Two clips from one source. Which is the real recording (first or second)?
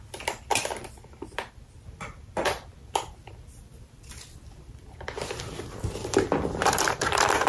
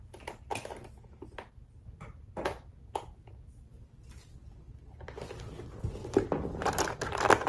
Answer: second